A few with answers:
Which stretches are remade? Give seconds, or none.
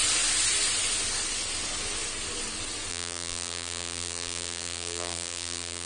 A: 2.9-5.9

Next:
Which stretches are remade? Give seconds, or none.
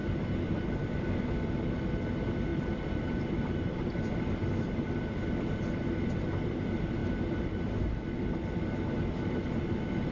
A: 0.0-1.1; 2.5-4.1; 7.0-7.7